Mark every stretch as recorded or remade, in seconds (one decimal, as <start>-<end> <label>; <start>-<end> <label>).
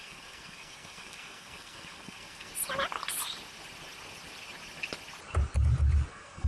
0.0-2.5 remade; 2.5-6.1 recorded; 6.1-6.5 remade